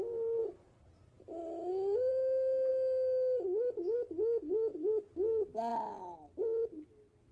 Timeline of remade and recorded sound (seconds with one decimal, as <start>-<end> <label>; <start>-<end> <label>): 0.0-7.3 recorded